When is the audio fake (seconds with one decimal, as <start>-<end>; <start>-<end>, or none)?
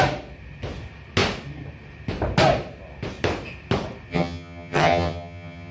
4.1-5.7